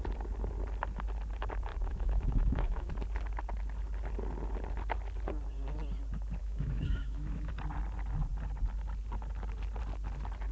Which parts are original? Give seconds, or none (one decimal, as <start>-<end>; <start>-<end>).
0.0-1.7; 2.9-6.4; 7.5-10.5